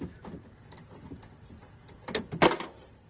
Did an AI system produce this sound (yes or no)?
no